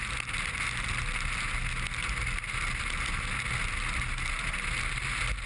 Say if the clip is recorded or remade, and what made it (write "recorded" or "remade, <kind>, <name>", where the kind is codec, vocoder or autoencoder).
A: recorded